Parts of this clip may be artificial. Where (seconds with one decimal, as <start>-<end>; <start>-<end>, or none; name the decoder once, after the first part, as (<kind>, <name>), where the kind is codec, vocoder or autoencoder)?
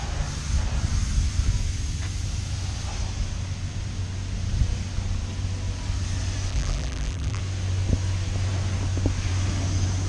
6.5-7.4 (vocoder, BigVGAN v2)